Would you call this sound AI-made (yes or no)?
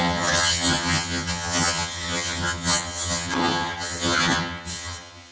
yes